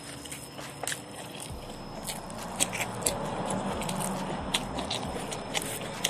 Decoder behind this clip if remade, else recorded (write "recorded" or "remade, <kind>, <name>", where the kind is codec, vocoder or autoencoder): recorded